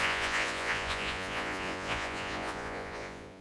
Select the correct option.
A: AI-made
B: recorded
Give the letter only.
A